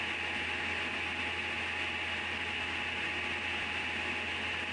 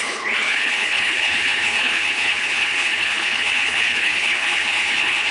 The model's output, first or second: second